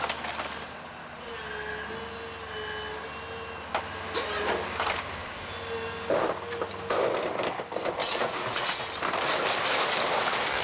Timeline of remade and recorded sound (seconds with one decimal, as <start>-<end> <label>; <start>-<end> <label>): 0.0-8.0 recorded; 8.0-8.8 remade; 8.8-10.6 recorded